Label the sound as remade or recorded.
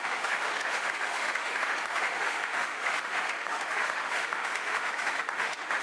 remade